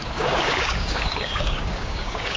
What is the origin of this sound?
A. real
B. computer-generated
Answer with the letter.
B